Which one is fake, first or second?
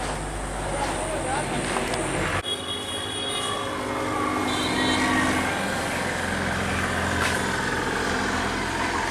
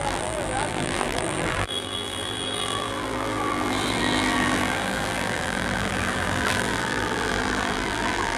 second